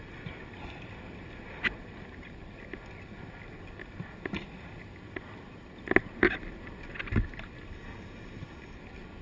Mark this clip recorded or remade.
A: recorded